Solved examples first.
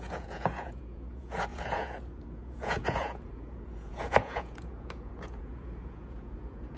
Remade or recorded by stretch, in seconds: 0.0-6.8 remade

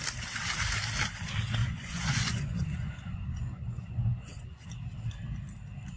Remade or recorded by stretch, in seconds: 0.0-1.6 recorded; 1.6-4.6 remade; 4.6-6.0 recorded

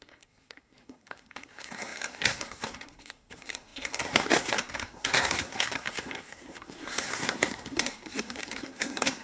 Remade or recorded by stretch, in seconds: 0.0-9.2 remade

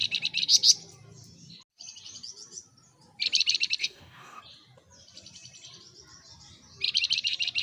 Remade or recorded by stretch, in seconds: 0.0-3.8 recorded; 3.8-4.4 remade; 4.4-7.6 recorded

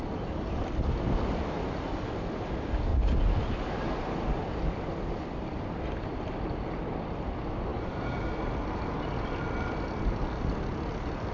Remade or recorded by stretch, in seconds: 0.0-11.3 recorded

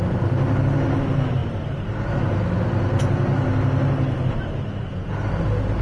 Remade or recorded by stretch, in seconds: 0.0-5.8 recorded